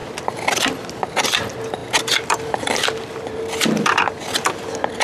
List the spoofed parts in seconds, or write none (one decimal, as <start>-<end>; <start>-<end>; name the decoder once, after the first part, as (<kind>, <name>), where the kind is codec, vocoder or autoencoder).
1.8-5.0 (vocoder, BigVGAN v2)